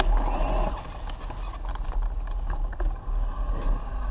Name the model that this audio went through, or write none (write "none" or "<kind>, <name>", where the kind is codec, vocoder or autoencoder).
none